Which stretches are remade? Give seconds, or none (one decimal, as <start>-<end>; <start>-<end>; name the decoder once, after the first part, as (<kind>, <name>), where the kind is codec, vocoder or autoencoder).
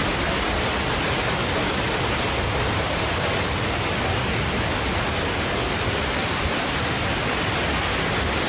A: none